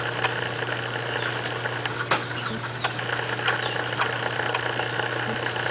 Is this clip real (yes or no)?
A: yes